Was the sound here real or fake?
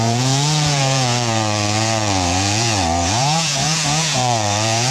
fake